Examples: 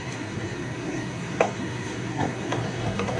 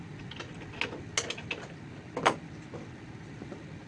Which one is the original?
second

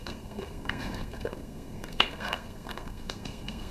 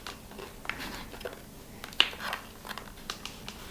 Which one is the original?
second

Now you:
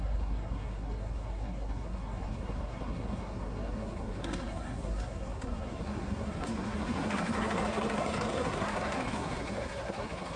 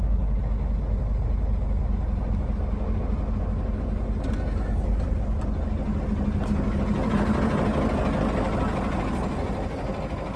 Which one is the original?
second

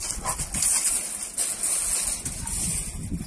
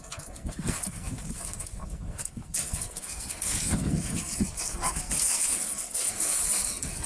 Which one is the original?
first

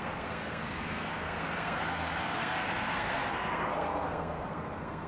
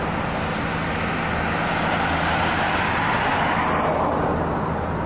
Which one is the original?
second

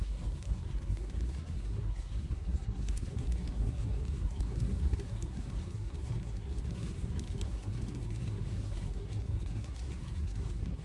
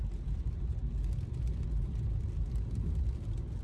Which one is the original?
second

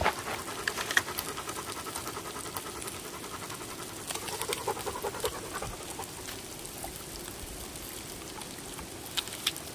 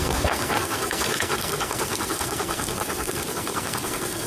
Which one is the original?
first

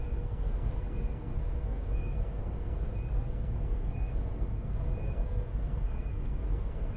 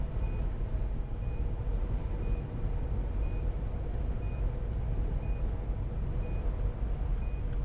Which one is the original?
second